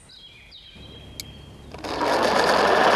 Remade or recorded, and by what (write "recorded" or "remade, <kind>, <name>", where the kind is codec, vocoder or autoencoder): recorded